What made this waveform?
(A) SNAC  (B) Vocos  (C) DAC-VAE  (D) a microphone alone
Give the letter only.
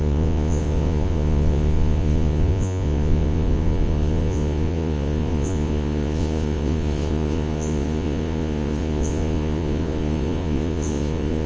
B